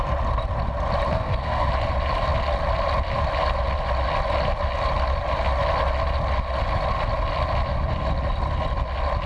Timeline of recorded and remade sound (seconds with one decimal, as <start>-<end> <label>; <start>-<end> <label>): 0.0-1.1 recorded; 1.1-1.7 remade; 1.7-9.3 recorded